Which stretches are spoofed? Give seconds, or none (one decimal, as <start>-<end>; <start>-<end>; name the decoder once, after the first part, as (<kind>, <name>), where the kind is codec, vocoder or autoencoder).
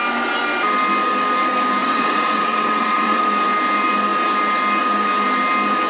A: 1.8-3.2 (vocoder, WaveNeXt)